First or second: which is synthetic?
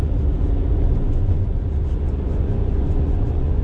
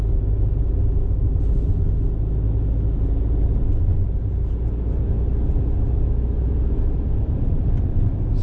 first